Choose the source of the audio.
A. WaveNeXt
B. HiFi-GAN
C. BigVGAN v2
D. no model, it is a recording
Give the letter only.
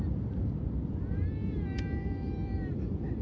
C